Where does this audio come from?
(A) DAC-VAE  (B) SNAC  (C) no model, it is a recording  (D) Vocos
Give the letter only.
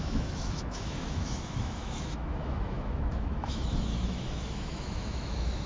A